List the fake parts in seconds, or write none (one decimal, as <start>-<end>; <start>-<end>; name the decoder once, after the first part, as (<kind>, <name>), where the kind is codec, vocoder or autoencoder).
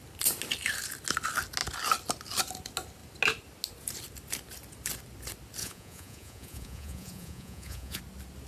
5.6-8.0 (vocoder, Vocos)